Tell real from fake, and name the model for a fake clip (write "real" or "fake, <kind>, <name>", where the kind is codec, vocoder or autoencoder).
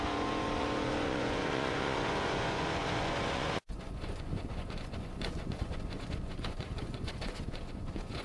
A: fake, vocoder, Vocos